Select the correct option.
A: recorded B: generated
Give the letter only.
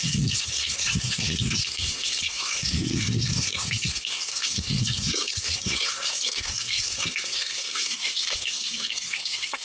B